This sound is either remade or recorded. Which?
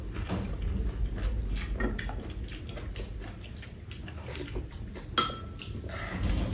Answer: recorded